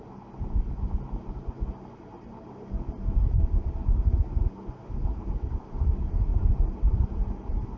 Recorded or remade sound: recorded